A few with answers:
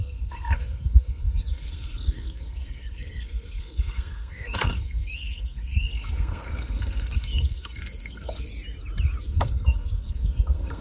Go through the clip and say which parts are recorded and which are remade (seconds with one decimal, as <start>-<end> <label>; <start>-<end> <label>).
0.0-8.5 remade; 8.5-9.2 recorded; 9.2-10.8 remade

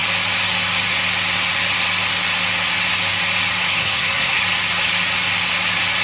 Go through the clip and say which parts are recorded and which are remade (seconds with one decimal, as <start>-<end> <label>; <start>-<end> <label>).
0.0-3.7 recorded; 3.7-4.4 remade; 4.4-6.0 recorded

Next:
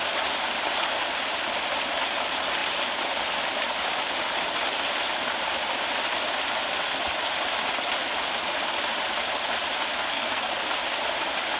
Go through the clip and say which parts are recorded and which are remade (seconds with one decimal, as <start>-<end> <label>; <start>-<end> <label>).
0.0-9.9 recorded; 9.9-10.5 remade; 10.5-11.6 recorded

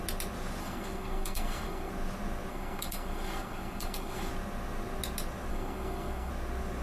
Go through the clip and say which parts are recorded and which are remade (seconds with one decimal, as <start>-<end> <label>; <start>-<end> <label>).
0.0-0.6 recorded; 0.6-1.9 remade; 1.9-2.5 recorded; 2.5-4.3 remade; 4.3-5.5 recorded; 5.5-6.3 remade; 6.3-6.8 recorded

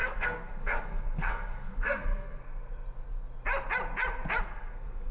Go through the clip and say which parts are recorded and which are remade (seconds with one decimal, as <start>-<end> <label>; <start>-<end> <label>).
0.0-2.4 remade; 2.4-4.4 recorded; 4.4-5.1 remade

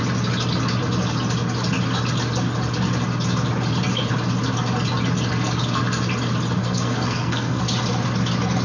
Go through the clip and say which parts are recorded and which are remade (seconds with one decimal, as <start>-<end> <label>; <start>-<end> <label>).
0.0-6.6 recorded; 6.6-7.6 remade; 7.6-8.6 recorded